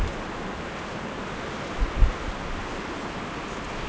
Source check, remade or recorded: recorded